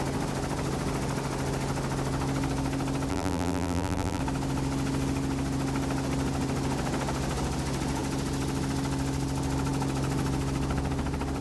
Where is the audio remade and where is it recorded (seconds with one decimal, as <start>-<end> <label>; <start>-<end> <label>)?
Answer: 0.0-3.1 recorded; 3.1-4.2 remade; 4.2-11.4 recorded